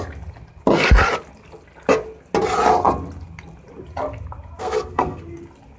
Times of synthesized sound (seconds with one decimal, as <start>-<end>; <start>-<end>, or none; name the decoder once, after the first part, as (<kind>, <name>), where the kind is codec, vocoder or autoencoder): 4.6-5.2 (codec, SNAC)

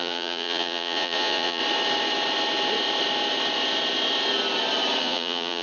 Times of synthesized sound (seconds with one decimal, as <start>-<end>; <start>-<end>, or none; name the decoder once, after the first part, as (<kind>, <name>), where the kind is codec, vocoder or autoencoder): 0.0-1.6 (vocoder, Vocos); 5.0-5.6

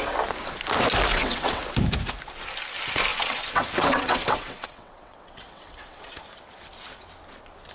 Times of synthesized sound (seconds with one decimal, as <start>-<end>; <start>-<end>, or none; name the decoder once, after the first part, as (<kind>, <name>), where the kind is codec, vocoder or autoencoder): 1.1-1.6 (vocoder, WaveNeXt); 3.1-6.1

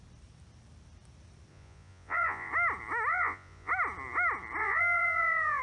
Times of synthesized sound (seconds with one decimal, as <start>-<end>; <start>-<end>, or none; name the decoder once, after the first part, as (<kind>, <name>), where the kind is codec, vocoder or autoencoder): 1.5-2.5 (vocoder, Vocos); 3.1-3.7; 4.6-5.6